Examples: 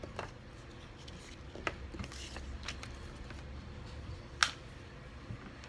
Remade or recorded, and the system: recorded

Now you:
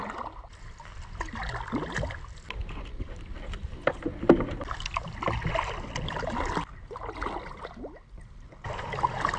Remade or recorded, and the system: recorded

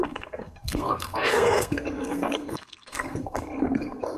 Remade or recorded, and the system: remade, codec, SNAC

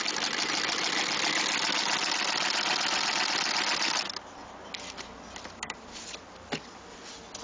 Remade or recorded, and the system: recorded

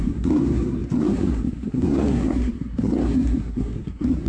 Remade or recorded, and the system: remade, codec, SNAC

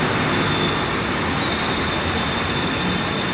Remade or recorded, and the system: recorded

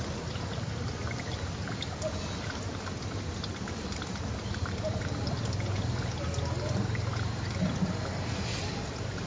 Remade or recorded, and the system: recorded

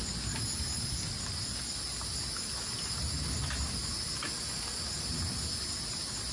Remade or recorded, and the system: recorded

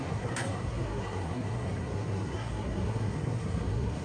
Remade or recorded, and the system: remade, codec, SNAC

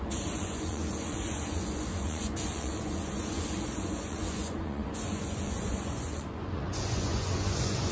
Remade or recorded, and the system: remade, vocoder, Vocos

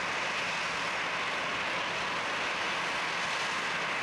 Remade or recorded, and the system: recorded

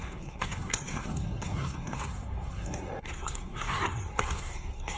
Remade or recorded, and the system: remade, codec, SNAC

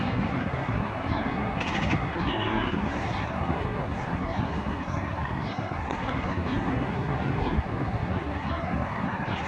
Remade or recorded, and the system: remade, codec, SNAC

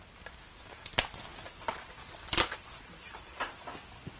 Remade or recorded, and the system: recorded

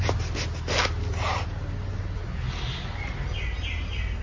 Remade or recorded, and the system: recorded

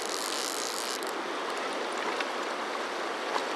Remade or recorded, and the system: recorded